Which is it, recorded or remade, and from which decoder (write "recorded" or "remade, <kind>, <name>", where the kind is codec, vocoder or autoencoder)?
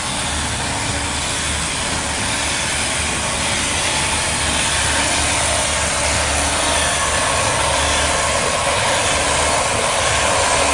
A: recorded